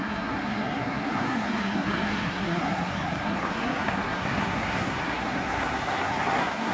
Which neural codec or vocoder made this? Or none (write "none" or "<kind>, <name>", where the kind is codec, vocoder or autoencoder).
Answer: codec, SNAC